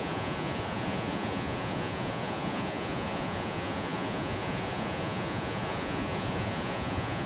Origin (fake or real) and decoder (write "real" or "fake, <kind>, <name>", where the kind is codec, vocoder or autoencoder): fake, vocoder, Vocos